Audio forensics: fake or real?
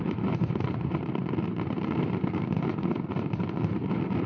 fake